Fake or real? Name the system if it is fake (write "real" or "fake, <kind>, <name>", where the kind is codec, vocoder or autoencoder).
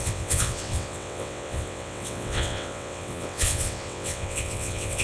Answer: fake, vocoder, WaveNeXt